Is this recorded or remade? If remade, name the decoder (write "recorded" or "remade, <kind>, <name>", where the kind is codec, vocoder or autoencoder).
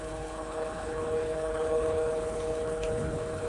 remade, codec, HILCodec